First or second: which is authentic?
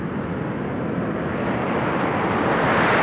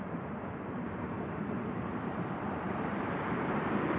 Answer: first